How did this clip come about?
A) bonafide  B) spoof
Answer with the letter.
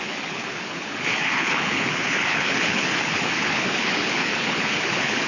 B